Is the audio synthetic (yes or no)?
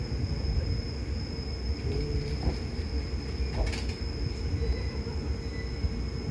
no